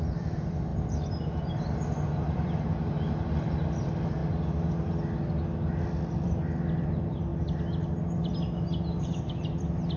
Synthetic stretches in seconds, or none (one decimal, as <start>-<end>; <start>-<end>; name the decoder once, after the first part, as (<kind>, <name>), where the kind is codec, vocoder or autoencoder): 0.0-4.2 (vocoder, BigVGAN v2); 5.8-7.3; 9.0-10.0